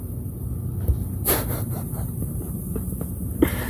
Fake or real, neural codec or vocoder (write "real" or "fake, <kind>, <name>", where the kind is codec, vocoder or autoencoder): real